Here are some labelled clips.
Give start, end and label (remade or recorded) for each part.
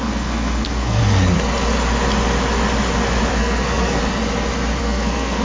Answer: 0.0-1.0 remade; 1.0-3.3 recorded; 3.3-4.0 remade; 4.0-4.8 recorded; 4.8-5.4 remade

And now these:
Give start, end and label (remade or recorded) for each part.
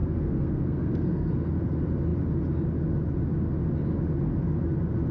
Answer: 0.0-1.3 remade; 1.3-5.1 recorded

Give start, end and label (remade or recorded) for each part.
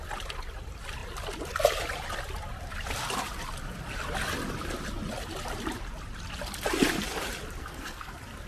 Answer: 0.0-7.6 recorded; 7.6-8.1 remade; 8.1-8.5 recorded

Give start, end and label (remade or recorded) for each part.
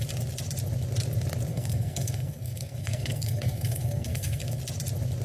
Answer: 0.0-1.5 recorded; 1.5-4.6 remade; 4.6-5.2 recorded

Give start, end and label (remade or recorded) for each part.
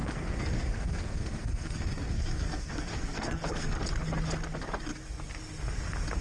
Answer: 0.0-3.7 remade; 3.7-6.2 recorded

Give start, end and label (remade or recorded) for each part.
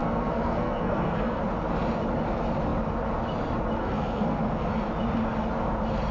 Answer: 0.0-1.4 remade; 1.4-3.8 recorded; 3.8-4.7 remade; 4.7-6.1 recorded